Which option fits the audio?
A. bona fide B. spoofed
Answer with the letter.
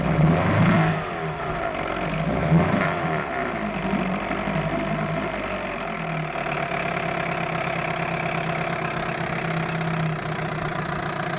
A